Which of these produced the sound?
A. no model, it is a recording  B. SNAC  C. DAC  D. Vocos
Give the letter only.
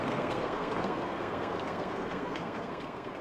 B